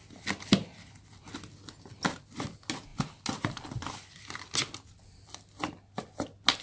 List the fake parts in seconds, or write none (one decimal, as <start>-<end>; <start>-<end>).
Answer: none